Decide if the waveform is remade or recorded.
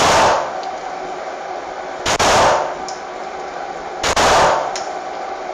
recorded